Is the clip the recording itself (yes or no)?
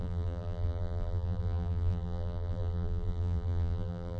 no